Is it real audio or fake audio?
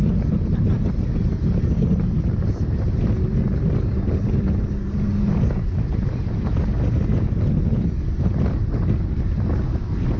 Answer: real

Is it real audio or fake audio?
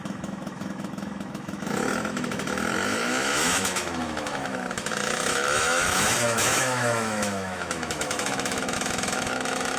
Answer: fake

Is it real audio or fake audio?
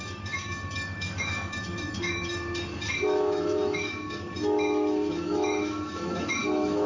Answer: fake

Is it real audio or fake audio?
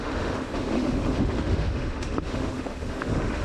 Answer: fake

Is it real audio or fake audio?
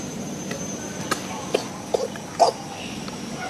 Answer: real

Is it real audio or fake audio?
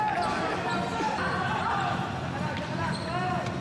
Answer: real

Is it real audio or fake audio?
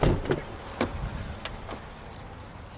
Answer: real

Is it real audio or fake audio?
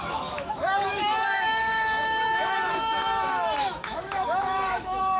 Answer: fake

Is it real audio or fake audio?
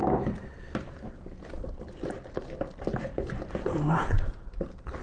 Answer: real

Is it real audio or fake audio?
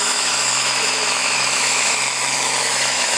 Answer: fake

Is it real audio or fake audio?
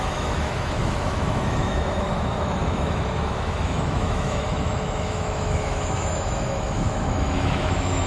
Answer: fake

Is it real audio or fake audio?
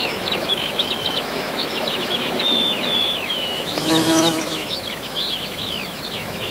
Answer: fake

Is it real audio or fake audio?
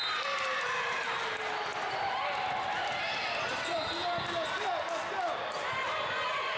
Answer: real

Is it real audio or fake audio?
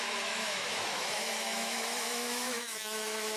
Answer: fake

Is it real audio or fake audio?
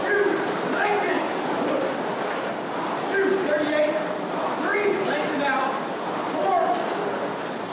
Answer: real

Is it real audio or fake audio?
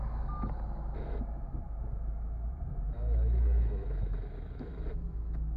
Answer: fake